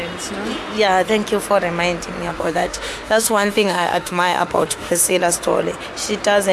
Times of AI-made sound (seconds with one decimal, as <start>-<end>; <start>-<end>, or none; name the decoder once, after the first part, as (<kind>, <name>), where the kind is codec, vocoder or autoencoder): 2.3-5.2 (autoencoder, DAC-VAE)